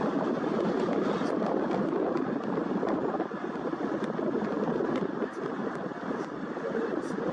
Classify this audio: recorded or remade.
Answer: recorded